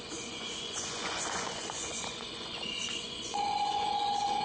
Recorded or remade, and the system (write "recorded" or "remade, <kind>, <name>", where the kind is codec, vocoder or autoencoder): remade, vocoder, Vocos